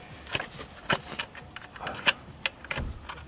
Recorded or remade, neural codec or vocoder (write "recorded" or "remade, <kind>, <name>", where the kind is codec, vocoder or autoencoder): recorded